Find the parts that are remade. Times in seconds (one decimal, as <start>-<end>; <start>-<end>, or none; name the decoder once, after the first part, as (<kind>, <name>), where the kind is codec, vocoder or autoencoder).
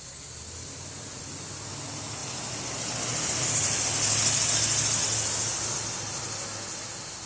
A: none